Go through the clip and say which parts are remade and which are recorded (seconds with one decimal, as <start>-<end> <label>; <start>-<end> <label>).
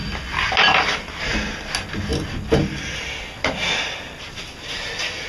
0.0-5.3 recorded